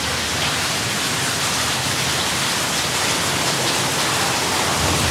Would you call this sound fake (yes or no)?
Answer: no